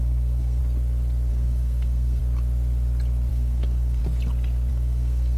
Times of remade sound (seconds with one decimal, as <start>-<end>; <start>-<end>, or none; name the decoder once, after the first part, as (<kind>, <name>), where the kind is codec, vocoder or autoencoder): 0.0-0.6 (codec, SNAC); 1.3-2.2; 3.3-4.0; 4.7-5.4